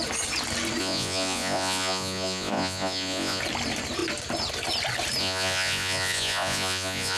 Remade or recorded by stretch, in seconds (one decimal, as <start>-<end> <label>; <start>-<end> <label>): 0.0-0.8 recorded; 0.8-3.4 remade; 3.4-5.2 recorded; 5.2-7.2 remade